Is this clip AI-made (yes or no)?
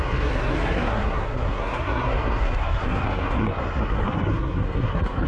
yes